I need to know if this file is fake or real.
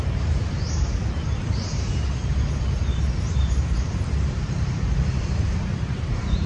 fake